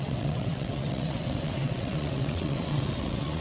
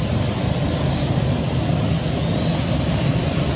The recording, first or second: second